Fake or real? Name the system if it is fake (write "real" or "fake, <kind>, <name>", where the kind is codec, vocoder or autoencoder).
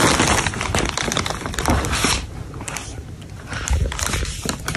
real